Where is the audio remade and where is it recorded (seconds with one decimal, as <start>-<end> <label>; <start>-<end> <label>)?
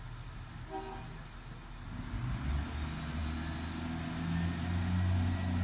0.0-5.6 recorded